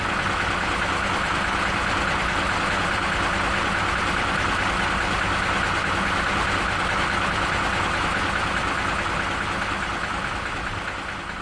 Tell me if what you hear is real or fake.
real